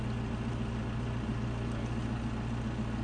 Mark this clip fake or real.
real